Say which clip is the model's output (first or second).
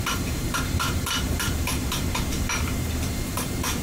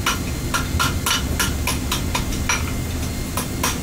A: first